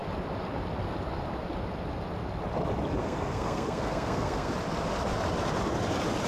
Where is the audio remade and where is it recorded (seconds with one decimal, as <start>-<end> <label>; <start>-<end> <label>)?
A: 0.0-3.0 recorded; 3.0-4.5 remade; 4.5-6.3 recorded